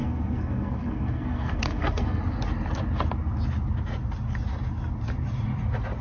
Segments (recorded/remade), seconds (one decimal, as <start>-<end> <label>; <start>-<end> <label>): 0.0-2.2 remade; 2.2-6.0 recorded